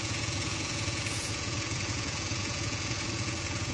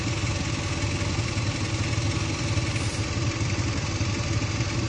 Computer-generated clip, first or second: first